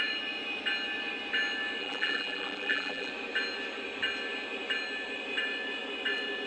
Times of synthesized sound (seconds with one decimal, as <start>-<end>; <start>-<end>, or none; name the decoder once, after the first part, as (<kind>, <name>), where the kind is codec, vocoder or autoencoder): 1.8-3.1 (vocoder, BigVGAN v2)